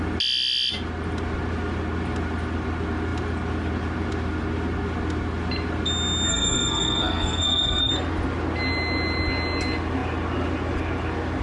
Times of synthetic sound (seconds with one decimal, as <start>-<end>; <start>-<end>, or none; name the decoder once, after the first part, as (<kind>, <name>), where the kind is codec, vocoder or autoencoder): 6.3-7.9 (codec, SNAC)